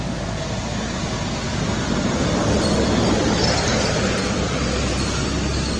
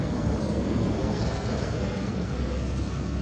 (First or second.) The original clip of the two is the first